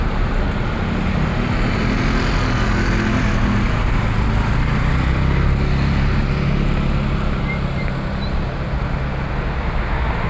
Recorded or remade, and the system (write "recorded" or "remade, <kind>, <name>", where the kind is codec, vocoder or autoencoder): recorded